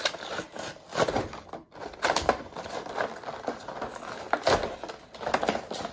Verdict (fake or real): real